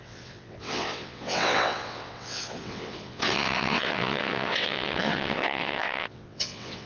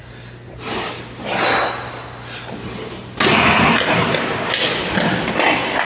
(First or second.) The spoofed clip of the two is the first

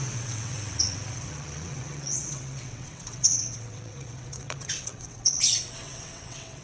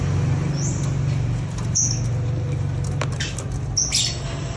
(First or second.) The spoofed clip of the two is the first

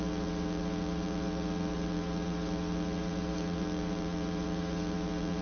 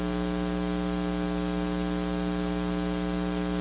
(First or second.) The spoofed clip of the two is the first